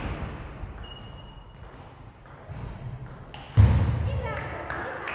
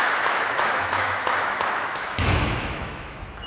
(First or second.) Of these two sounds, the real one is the first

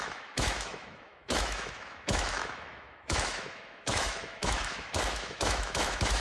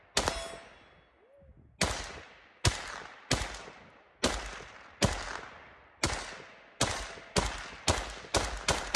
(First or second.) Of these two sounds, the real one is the second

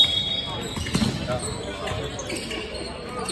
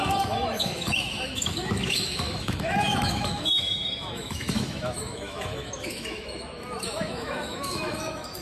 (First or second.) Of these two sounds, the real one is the first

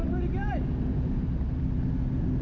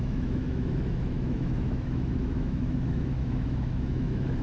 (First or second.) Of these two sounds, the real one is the first